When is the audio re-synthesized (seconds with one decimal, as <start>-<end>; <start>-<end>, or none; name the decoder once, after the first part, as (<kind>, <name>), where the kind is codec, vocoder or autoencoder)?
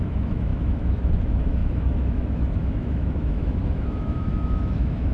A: 0.0-5.1 (autoencoder, DAC-VAE)